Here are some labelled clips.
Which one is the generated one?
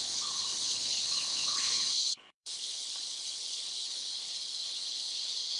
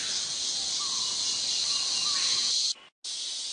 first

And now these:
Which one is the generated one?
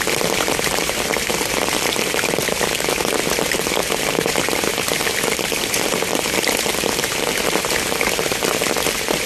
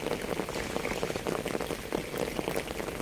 first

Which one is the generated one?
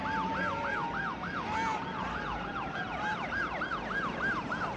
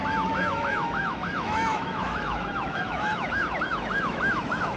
second